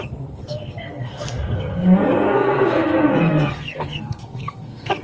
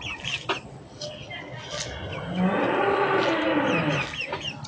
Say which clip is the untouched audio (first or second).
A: second